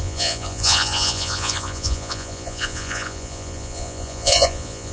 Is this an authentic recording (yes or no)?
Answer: no